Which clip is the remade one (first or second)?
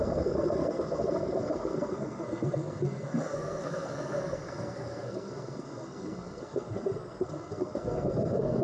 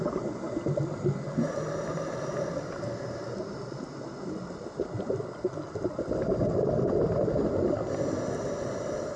first